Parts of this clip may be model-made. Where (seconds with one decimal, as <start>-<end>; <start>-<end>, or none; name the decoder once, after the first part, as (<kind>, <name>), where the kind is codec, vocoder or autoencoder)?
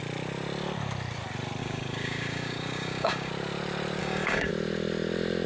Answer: 1.6-3.3 (codec, DAC); 4.0-4.5